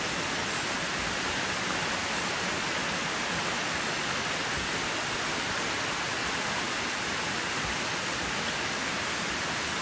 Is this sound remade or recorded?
recorded